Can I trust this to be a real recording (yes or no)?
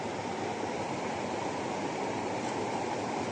yes